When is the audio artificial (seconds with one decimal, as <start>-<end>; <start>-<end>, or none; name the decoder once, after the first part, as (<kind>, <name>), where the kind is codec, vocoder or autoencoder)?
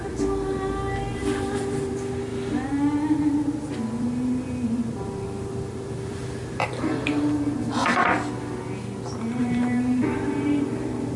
0.0-2.3 (vocoder, BigVGAN v2); 4.0-8.0; 9.4-11.2